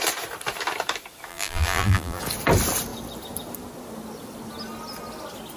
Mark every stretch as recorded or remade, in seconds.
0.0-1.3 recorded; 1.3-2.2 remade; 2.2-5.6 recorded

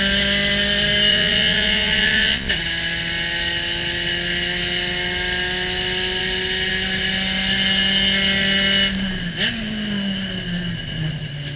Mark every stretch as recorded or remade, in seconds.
0.0-1.1 recorded; 1.1-2.5 remade; 2.5-11.6 recorded

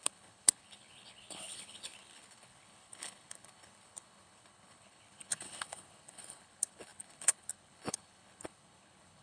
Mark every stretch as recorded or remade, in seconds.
0.0-9.2 remade